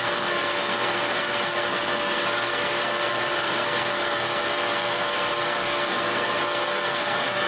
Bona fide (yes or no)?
no